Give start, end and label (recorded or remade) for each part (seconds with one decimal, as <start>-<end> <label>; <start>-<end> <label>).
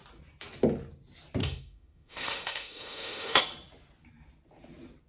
0.0-1.4 recorded; 1.4-3.4 remade; 3.4-5.1 recorded